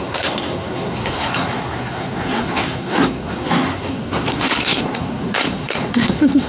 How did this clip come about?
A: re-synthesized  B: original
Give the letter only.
A